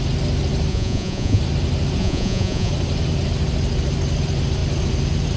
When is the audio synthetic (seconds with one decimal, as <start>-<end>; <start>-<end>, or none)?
0.7-1.4; 2.0-2.7